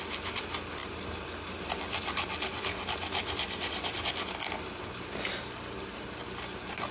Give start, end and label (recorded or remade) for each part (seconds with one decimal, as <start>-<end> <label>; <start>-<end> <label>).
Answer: 0.0-6.9 recorded